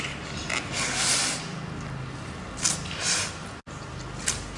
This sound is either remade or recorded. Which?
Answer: recorded